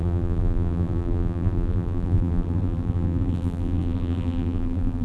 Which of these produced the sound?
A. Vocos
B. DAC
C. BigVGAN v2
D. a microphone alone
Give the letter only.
C